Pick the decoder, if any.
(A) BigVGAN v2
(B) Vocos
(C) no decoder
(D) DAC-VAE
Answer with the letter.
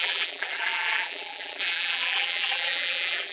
A